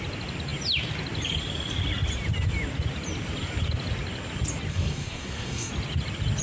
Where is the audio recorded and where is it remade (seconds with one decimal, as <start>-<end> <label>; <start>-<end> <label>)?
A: 0.0-4.7 recorded; 4.7-5.7 remade; 5.7-6.4 recorded